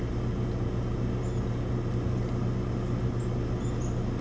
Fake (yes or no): no